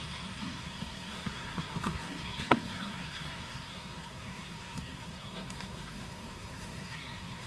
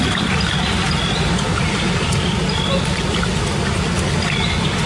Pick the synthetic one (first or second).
first